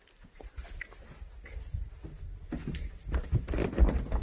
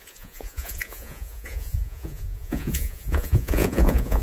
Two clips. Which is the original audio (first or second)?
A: first